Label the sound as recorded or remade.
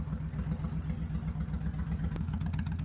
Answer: recorded